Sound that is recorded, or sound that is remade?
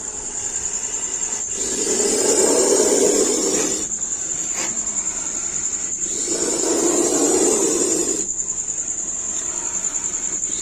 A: remade